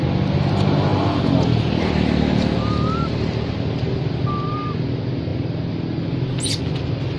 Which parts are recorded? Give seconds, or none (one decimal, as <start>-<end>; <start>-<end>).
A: 0.0-7.2